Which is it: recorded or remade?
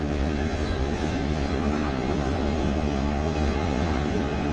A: remade